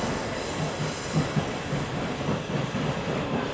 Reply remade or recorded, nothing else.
recorded